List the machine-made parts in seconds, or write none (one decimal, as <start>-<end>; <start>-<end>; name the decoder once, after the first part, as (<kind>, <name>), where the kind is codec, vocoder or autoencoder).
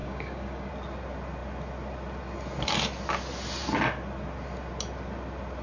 0.0-0.7 (codec, DAC)